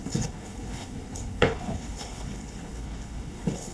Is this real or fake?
fake